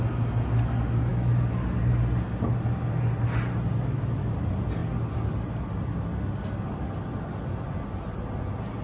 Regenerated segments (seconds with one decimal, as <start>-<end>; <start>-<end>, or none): none